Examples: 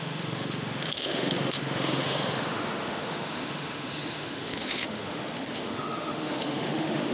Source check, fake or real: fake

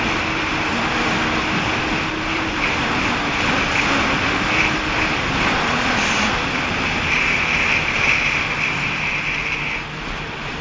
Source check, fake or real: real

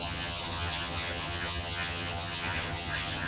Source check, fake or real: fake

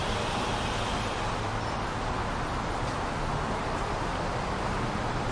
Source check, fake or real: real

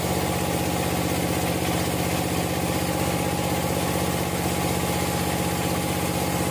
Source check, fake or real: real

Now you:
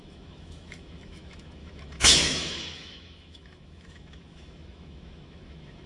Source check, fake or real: fake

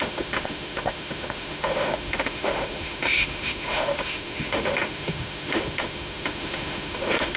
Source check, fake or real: fake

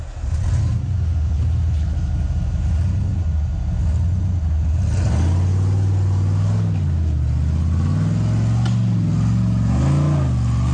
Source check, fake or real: real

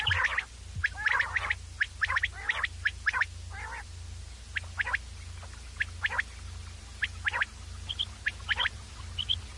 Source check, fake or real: real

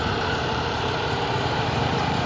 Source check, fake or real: fake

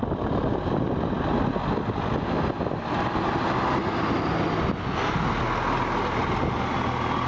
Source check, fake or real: real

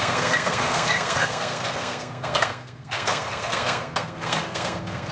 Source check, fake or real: fake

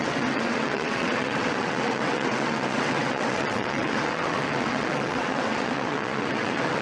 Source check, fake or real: fake